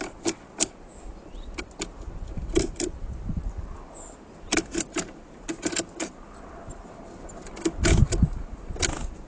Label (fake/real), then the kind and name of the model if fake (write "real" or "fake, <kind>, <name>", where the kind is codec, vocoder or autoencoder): real